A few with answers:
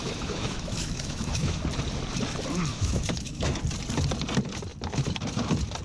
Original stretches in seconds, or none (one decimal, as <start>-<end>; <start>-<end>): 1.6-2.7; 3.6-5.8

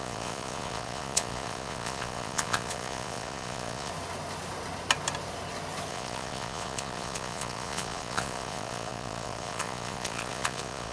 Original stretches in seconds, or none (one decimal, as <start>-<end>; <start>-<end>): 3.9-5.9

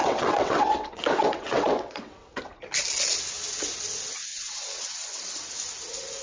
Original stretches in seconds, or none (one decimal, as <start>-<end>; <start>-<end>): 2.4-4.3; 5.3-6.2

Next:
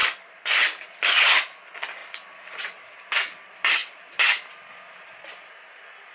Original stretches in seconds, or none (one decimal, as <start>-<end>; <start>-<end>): 0.8-2.0; 3.0-3.8; 4.5-6.1

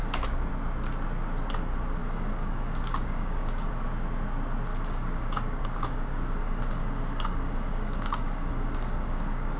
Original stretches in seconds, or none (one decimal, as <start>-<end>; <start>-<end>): 0.5-2.0; 3.7-4.7

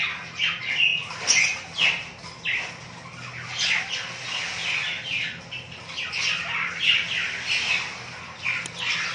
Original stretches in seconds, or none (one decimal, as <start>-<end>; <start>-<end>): 0.0-9.1